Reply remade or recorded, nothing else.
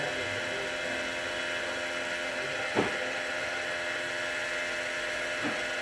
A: recorded